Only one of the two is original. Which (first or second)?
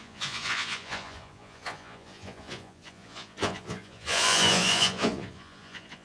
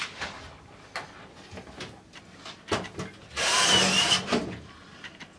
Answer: second